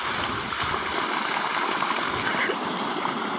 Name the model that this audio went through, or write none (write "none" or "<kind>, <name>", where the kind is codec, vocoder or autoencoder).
none